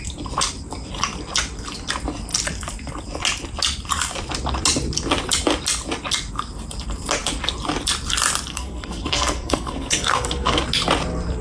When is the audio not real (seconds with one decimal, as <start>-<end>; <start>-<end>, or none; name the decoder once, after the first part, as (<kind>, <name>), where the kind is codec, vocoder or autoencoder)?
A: 8.5-10.6 (codec, SNAC)